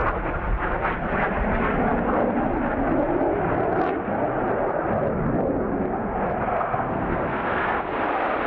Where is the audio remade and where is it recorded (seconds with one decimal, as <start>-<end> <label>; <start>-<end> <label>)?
0.0-6.5 recorded; 6.5-7.7 remade; 7.7-8.5 recorded